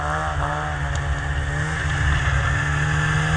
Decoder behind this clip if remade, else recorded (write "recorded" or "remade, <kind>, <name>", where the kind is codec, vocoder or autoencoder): recorded